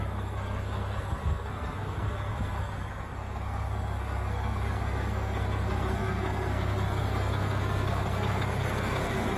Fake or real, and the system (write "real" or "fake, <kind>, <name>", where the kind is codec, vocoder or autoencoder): fake, codec, SNAC